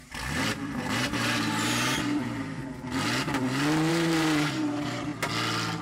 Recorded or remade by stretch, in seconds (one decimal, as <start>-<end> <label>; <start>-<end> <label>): 0.0-2.6 remade; 2.6-3.9 recorded; 3.9-5.1 remade; 5.1-5.8 recorded